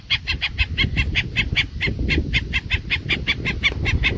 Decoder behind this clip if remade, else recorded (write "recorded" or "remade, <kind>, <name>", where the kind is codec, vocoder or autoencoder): remade, vocoder, BigVGAN v2